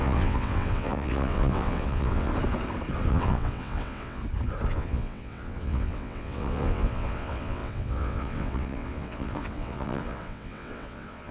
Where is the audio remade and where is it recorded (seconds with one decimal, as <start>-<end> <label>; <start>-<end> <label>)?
0.0-2.3 remade; 2.3-3.1 recorded; 3.1-4.2 remade; 4.2-4.7 recorded; 4.7-11.3 remade